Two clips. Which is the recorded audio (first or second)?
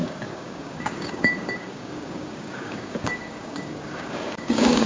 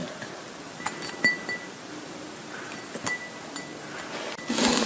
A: second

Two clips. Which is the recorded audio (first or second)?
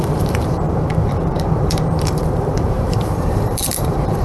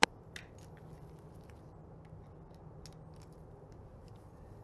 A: second